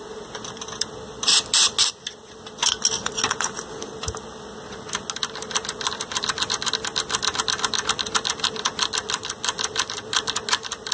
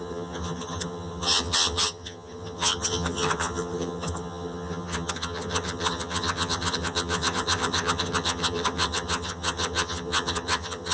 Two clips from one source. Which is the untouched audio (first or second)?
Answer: first